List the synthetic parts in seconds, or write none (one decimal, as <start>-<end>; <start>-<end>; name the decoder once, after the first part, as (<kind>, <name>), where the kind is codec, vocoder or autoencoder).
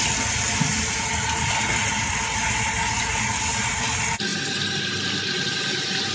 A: none